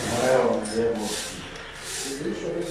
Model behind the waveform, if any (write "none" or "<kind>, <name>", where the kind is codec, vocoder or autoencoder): none